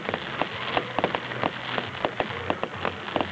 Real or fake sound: real